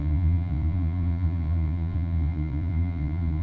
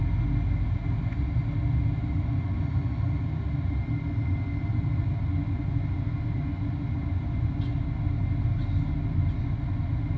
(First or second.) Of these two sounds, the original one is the second